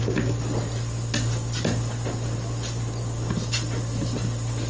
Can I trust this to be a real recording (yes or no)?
yes